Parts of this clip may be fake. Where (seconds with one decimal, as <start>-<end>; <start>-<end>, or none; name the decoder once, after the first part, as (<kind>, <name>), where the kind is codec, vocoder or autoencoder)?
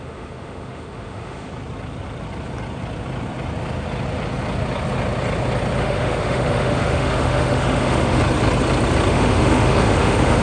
0.0-1.5 (autoencoder, DAC-VAE); 5.8-8.2; 9.1-10.4